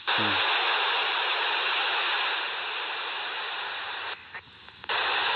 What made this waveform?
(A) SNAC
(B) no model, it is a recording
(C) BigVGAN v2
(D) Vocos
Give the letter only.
B